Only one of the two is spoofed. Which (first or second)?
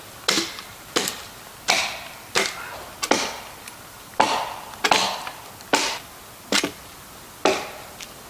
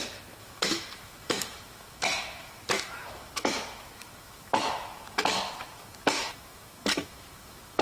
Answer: second